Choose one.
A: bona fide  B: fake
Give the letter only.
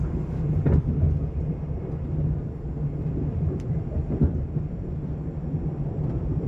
B